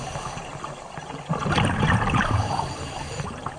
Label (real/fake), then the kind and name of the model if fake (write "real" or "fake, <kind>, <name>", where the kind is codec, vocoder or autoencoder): real